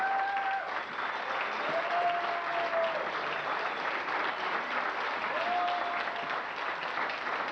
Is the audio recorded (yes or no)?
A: yes